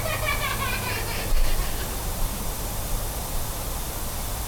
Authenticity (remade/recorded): recorded